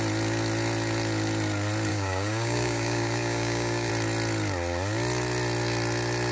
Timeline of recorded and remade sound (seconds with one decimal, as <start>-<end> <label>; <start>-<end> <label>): 0.0-1.9 recorded; 1.9-3.9 remade; 3.9-6.3 recorded